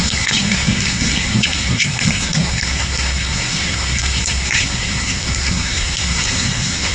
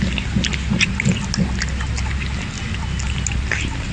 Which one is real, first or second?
second